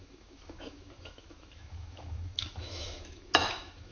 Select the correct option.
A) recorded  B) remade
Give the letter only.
B